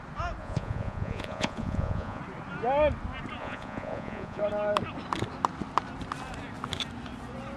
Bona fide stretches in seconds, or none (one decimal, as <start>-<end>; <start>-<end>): 0.0-0.4; 2.2-3.4; 4.4-7.6